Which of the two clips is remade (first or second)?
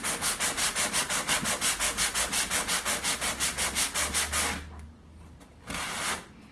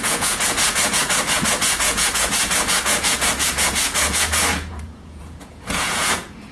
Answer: second